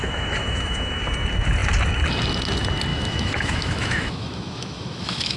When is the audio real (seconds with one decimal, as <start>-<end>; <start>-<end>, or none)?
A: 1.0-2.9